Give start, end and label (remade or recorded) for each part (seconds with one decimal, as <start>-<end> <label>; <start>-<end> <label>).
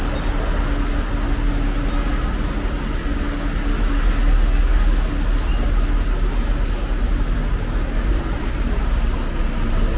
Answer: 0.0-10.0 recorded